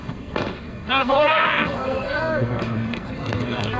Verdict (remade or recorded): remade